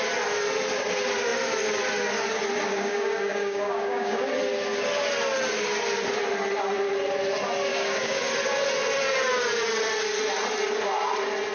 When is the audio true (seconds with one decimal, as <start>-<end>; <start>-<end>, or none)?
0.0-2.7; 4.3-7.7; 8.3-11.5